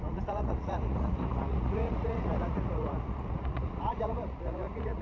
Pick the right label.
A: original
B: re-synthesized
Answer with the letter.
B